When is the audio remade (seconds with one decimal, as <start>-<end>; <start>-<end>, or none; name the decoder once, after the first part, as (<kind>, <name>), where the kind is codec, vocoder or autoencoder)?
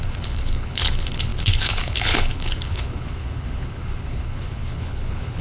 0.0-5.4 (codec, HILCodec)